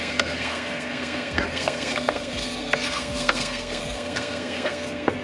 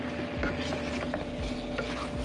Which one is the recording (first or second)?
second